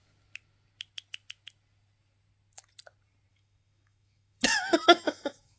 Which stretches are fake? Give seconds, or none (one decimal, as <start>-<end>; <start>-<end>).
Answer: 3.3-5.6